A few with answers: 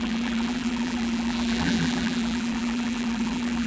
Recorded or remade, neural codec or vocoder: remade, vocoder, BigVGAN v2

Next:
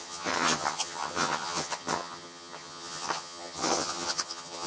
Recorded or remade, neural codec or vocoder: remade, vocoder, HiFi-GAN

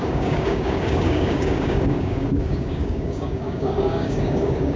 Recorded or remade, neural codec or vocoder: remade, codec, DAC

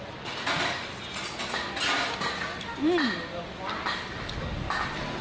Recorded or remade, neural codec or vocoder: recorded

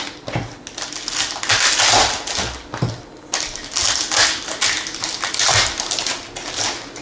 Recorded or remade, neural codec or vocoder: recorded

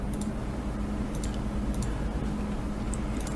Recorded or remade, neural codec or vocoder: recorded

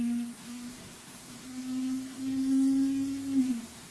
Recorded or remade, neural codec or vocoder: remade, codec, SNAC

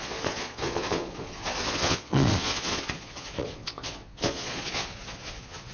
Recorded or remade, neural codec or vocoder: remade, vocoder, Vocos